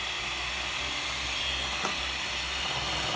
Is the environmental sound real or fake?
real